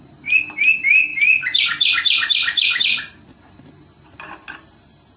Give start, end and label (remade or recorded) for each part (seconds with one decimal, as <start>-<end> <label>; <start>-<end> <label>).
0.0-5.2 recorded